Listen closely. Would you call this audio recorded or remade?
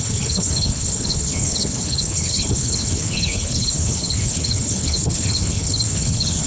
remade